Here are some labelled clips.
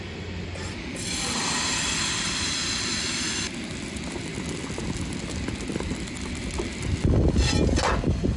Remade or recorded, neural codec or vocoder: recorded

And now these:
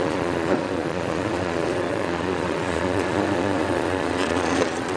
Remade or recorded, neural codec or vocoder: remade, vocoder, Vocos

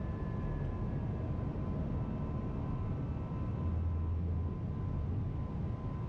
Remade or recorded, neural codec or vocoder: recorded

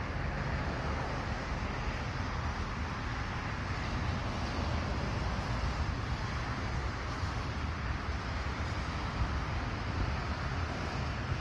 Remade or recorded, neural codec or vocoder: recorded